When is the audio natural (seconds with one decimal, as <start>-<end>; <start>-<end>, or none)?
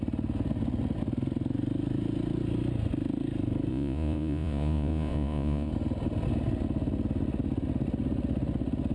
0.0-3.7; 5.7-8.9